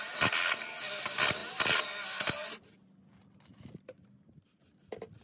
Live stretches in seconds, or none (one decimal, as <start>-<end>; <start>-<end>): 0.0-5.2